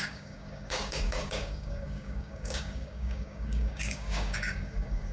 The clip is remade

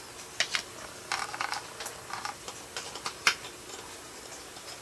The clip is recorded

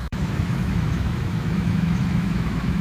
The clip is remade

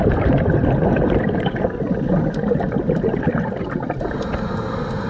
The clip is recorded